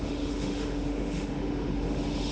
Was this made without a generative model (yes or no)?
no